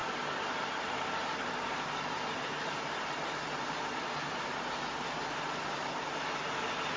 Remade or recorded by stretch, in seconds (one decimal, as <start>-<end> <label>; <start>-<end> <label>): 0.0-7.0 recorded